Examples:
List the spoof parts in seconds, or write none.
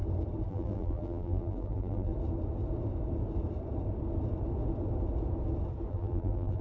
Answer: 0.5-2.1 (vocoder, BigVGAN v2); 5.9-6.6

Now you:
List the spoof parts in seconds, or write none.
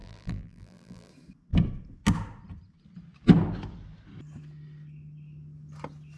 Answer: 0.0-1.1 (vocoder, BigVGAN v2)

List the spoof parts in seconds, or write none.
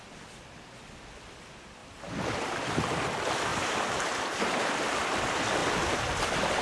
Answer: 3.5-4.7 (vocoder, BigVGAN v2)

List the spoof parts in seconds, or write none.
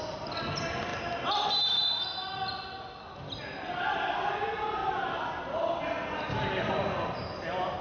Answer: 4.8-5.8 (vocoder, BigVGAN v2)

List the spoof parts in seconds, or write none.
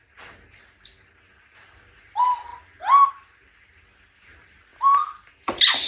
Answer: 2.5-3.5 (vocoder, BigVGAN v2)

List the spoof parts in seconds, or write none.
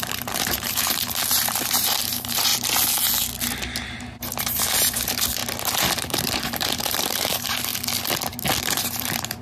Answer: 0.0-2.5 (vocoder, BigVGAN v2); 4.4-5.4; 6.0-7.7; 8.6-9.4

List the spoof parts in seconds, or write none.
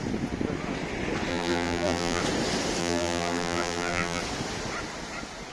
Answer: 1.3-2.2 (vocoder, BigVGAN v2); 2.8-4.2